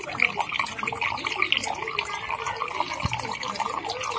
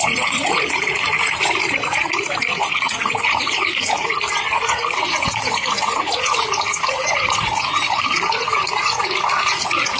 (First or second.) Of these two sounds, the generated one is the second